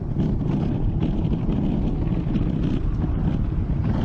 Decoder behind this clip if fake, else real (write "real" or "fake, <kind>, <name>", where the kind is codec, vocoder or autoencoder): real